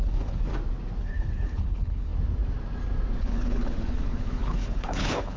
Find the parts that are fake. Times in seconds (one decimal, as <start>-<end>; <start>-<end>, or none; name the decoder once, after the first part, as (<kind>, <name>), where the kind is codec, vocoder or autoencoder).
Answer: 0.0-0.5 (codec, HILCodec); 1.0-2.1; 3.2-5.4